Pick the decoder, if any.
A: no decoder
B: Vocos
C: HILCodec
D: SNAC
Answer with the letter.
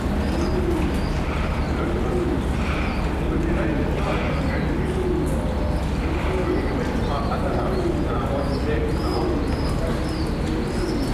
A